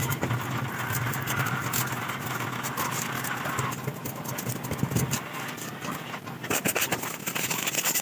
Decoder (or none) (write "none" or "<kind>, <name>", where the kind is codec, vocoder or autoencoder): none